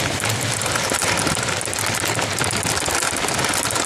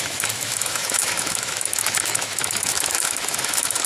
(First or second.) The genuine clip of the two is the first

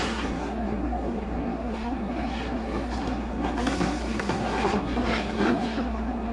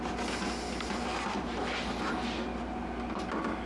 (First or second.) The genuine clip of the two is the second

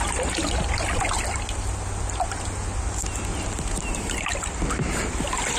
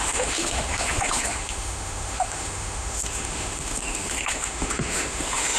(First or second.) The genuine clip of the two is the first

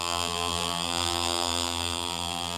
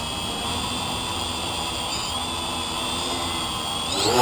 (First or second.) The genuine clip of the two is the second